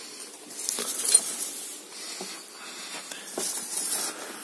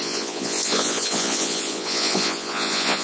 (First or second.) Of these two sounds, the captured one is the first